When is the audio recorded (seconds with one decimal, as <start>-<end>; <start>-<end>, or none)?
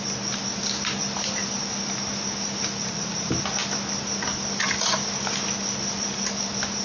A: 0.0-6.8